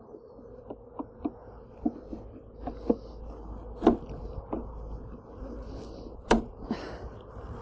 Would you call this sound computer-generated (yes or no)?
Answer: no